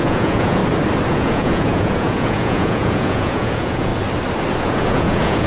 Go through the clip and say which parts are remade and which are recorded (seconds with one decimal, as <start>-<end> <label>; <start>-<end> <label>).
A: 0.0-0.6 remade; 0.6-1.1 recorded; 1.1-3.9 remade; 3.9-4.6 recorded; 4.6-5.5 remade